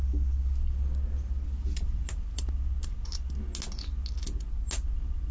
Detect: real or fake real